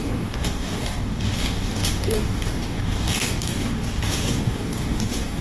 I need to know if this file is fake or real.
fake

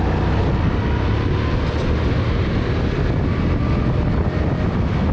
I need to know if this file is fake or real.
real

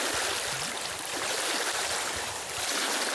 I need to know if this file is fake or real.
real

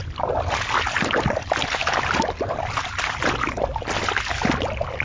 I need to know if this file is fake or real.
real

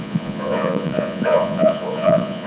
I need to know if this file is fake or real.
fake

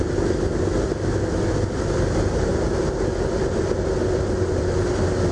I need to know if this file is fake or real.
real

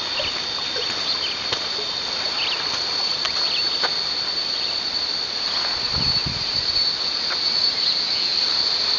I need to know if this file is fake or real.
real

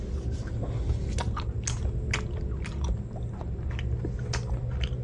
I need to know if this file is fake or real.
real